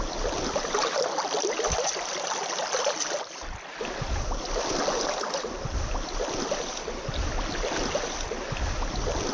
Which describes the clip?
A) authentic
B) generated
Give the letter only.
A